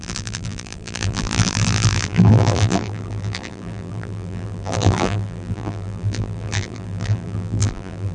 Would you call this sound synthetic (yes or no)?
yes